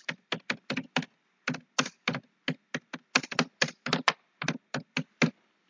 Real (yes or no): yes